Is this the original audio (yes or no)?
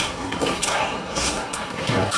no